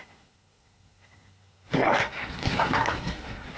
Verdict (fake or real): fake